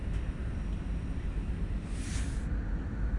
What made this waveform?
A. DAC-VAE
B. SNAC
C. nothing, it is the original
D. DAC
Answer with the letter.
C